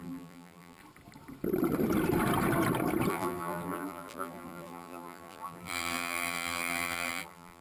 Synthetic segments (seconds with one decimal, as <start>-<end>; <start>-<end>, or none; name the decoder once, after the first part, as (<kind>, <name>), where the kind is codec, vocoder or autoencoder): 0.0-0.8 (vocoder, BigVGAN v2); 3.1-7.6